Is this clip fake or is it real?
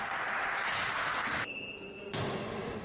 real